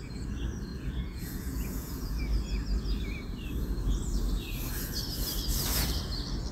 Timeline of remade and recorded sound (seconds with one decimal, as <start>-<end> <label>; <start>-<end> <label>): 0.0-0.7 recorded; 0.7-2.2 remade; 2.2-6.5 recorded